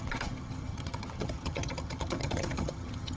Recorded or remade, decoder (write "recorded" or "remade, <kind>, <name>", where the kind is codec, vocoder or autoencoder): remade, vocoder, HiFi-GAN